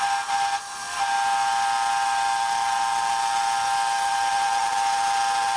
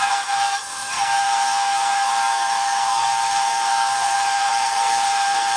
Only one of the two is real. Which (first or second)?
first